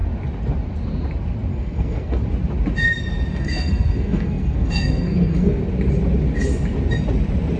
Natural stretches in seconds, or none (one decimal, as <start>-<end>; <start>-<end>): 0.0-1.5; 2.2-3.3; 5.6-7.6